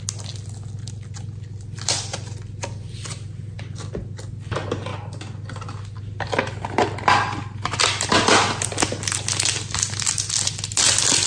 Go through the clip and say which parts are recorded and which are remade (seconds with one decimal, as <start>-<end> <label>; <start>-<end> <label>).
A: 0.0-11.3 recorded